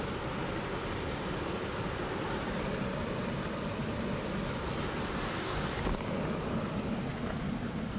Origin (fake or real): real